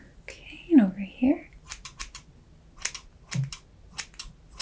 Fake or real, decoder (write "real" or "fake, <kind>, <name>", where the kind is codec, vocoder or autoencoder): real